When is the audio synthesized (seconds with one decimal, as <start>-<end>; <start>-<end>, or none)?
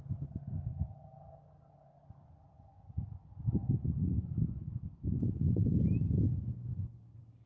none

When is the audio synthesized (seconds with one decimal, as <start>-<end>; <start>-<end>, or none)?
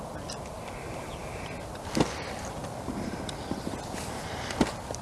none